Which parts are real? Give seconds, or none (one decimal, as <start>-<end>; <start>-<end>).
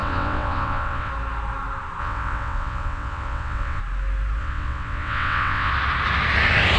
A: 1.1-2.0; 3.8-4.4; 5.7-6.8